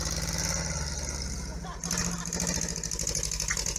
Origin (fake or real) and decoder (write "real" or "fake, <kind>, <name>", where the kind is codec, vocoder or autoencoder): real